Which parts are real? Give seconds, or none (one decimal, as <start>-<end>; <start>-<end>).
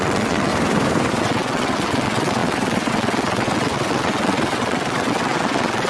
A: 0.5-1.2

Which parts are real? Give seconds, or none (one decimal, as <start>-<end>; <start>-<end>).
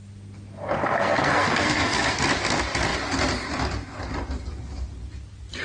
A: 0.0-0.8; 2.2-5.6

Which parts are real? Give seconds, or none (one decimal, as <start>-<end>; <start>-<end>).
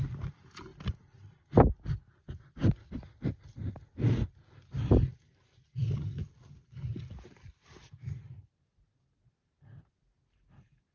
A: 0.0-10.9